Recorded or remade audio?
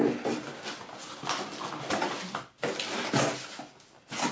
recorded